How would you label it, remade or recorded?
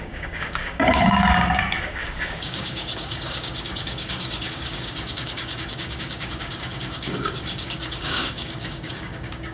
remade